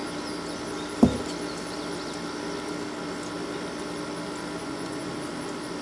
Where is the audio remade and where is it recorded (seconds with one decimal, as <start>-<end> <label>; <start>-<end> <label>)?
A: 0.0-4.6 recorded; 4.6-5.1 remade; 5.1-5.8 recorded